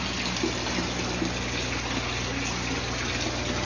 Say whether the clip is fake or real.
real